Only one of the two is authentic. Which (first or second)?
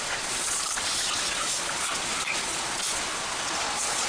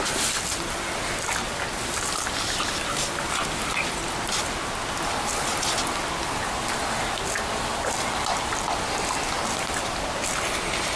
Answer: second